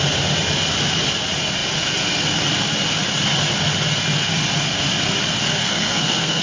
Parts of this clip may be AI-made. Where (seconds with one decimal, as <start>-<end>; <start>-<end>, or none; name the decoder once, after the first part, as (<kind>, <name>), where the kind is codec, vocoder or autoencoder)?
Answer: 5.6-6.4 (codec, SNAC)